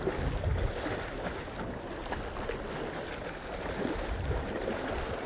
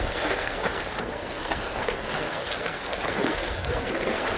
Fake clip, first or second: second